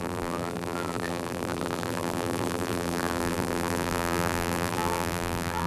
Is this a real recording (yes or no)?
no